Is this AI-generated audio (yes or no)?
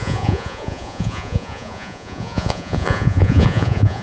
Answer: yes